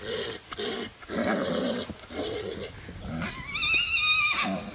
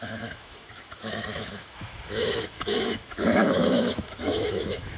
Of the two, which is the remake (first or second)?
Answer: second